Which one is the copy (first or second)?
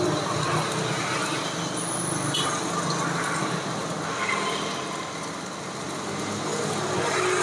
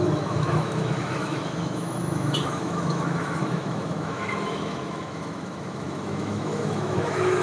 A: second